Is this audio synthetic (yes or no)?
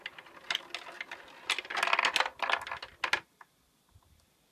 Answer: no